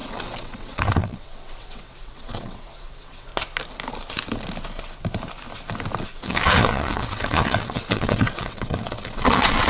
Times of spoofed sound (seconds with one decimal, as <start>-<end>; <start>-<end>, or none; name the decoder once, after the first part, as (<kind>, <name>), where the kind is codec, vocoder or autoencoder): 0.0-3.3 (vocoder, WaveNeXt); 6.0-9.7